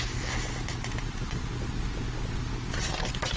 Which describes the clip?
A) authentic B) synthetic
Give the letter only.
A